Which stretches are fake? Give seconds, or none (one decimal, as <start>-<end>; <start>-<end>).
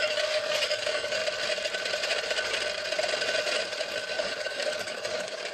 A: 0.0-1.2; 4.0-5.5